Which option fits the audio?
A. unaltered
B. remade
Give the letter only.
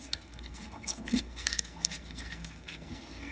B